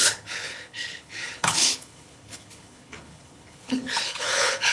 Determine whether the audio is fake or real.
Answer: fake